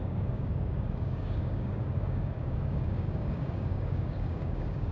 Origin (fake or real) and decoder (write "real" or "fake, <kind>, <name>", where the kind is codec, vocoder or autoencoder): fake, codec, DAC